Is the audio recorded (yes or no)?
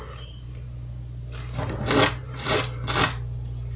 yes